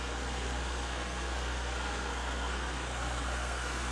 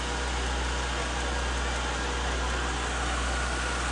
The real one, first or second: second